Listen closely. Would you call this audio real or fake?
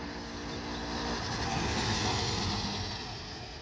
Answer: real